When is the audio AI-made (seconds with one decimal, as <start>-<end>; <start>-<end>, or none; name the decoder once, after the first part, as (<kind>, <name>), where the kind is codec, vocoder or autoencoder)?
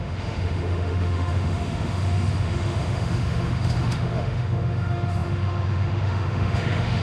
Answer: 0.0-7.0 (autoencoder, DAC-VAE)